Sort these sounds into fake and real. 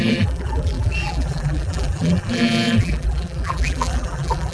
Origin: fake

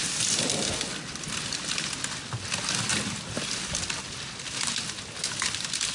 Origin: real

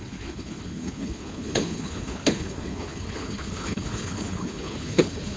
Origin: fake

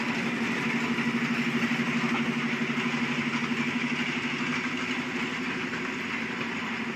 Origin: real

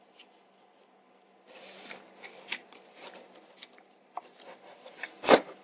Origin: real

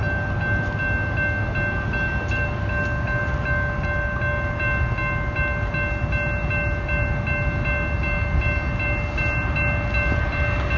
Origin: real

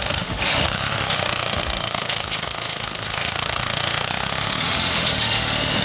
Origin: fake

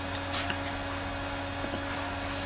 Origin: real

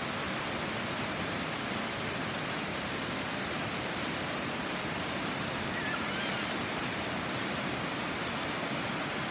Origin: fake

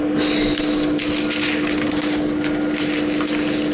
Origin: real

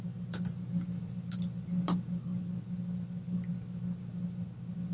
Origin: real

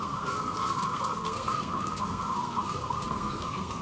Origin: fake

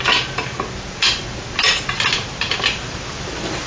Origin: fake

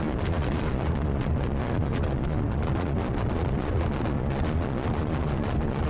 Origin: fake